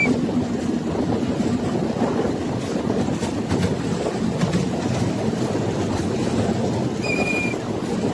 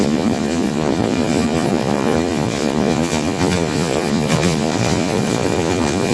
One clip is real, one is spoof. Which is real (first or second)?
first